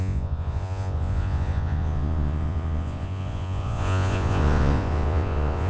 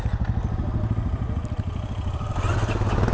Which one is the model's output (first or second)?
first